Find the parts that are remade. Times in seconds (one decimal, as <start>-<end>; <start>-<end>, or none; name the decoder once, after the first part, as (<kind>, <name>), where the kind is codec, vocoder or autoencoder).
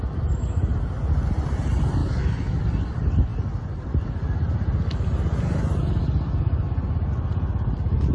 2.0-2.6 (autoencoder, DAC-VAE)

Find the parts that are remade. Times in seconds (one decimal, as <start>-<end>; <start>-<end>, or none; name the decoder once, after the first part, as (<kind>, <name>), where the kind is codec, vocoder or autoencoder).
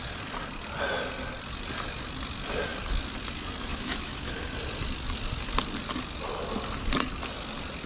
3.7-4.5 (autoencoder, DAC-VAE)